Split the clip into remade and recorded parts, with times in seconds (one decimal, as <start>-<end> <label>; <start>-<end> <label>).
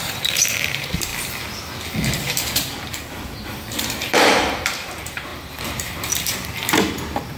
0.0-1.1 remade; 1.1-2.2 recorded; 2.2-7.4 remade